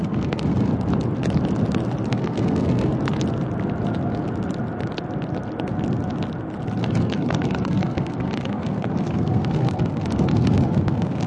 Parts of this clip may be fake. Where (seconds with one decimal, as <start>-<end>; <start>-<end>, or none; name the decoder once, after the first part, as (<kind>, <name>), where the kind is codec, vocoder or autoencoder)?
0.0-0.7 (codec, SNAC); 2.1-2.9; 6.8-11.3